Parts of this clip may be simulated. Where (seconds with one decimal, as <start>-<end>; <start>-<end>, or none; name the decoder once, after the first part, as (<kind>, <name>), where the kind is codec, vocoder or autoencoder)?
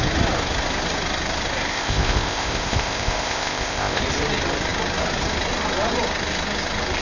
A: 1.7-4.0 (codec, ZipCodec)